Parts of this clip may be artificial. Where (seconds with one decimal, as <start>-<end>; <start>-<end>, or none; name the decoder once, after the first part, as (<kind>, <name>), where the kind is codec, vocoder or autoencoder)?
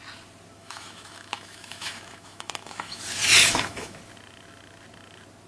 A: 0.6-3.0 (autoencoder, DAC-VAE); 3.4-4.0